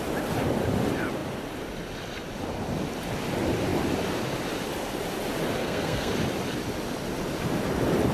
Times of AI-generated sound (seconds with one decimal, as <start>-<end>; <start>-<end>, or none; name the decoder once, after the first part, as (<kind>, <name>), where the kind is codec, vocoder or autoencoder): 5.6-6.1 (codec, SNAC)